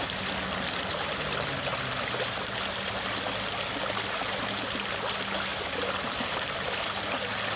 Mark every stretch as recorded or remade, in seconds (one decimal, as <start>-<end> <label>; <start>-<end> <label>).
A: 0.0-7.6 recorded